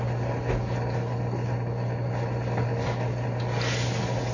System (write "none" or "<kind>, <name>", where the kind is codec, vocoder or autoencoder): none